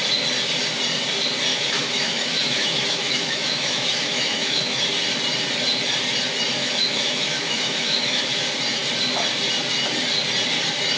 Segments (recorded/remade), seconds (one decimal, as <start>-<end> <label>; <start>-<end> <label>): 0.0-1.5 recorded; 1.5-4.8 remade; 4.8-6.6 recorded; 6.6-8.4 remade; 8.4-11.0 recorded